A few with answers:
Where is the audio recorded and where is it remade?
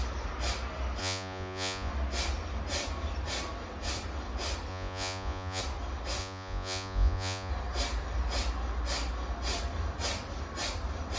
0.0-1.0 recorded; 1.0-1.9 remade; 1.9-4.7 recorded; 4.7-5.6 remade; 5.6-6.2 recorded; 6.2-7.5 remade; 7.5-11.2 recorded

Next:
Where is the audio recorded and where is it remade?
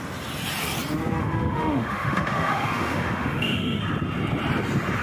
0.0-1.2 recorded; 1.2-3.8 remade; 3.8-5.0 recorded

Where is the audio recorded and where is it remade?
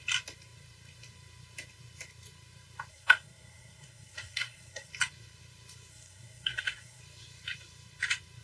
0.0-2.9 recorded; 2.9-4.9 remade; 4.9-5.9 recorded; 5.9-7.0 remade; 7.0-8.4 recorded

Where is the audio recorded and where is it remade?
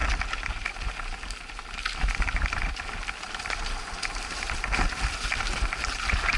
0.0-6.4 recorded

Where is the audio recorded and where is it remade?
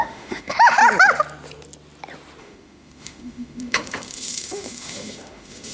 0.0-0.8 remade; 0.8-2.4 recorded; 2.4-5.7 remade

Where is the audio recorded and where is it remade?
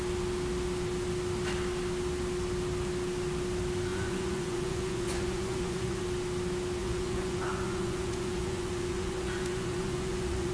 0.0-3.9 recorded; 3.9-6.0 remade; 6.0-6.8 recorded; 6.8-10.5 remade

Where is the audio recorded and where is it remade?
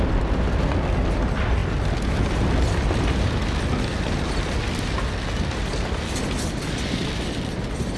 0.0-8.0 recorded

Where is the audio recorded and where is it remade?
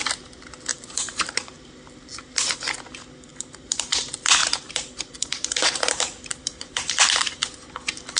0.0-0.7 recorded; 0.7-1.7 remade; 1.7-3.3 recorded; 3.3-3.9 remade; 3.9-4.4 recorded; 4.4-7.4 remade; 7.4-8.2 recorded